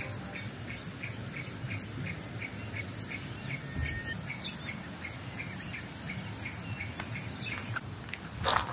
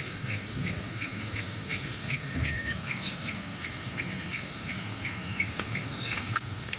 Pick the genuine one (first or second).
first